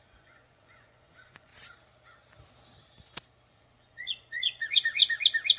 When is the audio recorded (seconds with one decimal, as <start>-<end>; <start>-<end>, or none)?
1.5-3.5; 5.0-5.6